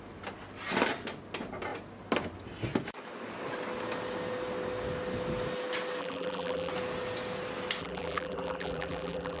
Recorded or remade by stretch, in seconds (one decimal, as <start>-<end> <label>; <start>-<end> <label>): 0.0-6.0 recorded; 6.0-6.7 remade; 6.7-7.8 recorded; 7.8-9.4 remade